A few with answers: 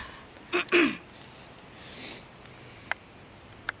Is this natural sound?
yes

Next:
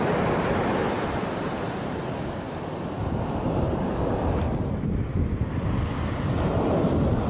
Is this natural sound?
yes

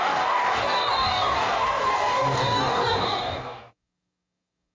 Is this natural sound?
no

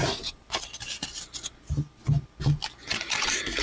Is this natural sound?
yes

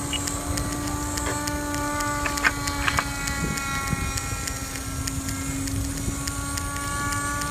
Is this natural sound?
yes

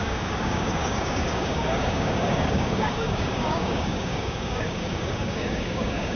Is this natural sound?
no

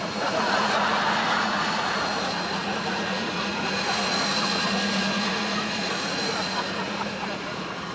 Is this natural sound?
no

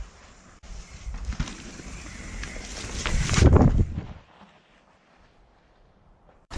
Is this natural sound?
no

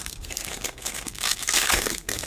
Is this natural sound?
no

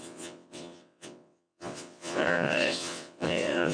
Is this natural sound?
no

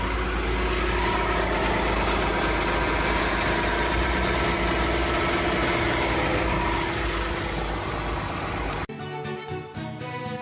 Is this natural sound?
yes